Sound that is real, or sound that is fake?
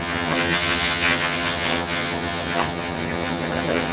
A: fake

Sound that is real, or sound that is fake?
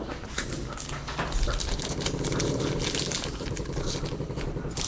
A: real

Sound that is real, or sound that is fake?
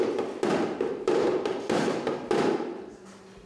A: fake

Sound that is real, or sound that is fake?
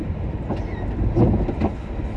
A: real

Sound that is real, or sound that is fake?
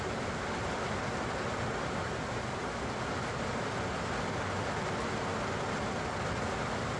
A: real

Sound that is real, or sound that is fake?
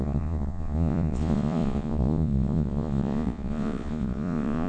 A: fake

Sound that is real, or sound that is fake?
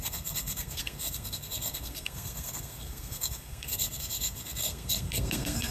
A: fake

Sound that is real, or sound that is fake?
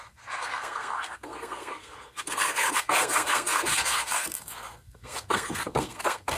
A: fake